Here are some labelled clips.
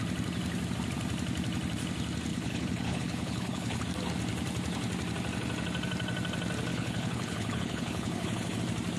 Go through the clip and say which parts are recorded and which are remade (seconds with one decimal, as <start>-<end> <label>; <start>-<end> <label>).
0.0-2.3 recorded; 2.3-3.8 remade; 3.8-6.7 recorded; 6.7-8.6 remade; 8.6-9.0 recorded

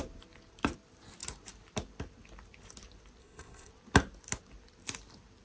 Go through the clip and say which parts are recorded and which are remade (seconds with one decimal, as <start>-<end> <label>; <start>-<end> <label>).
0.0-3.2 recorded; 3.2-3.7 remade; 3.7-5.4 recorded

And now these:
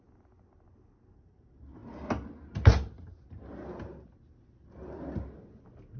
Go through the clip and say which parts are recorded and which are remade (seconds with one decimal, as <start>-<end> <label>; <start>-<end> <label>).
0.0-6.0 recorded